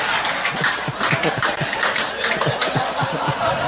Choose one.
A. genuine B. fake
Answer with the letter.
A